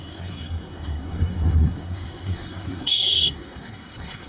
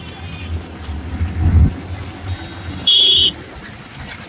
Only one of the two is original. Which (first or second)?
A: second